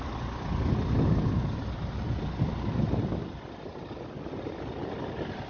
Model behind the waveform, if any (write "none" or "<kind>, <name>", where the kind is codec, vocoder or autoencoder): none